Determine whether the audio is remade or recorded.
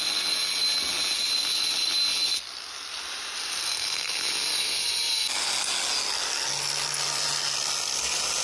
recorded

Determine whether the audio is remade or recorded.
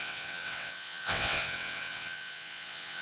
remade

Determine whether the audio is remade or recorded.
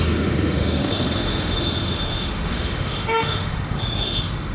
remade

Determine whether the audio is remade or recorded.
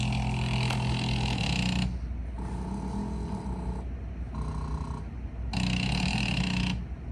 recorded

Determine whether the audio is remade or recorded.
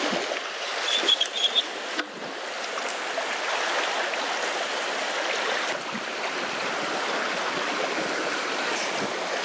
recorded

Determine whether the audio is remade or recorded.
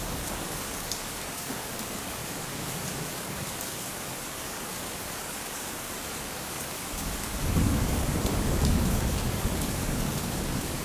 remade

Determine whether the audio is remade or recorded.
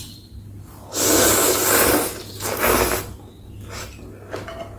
recorded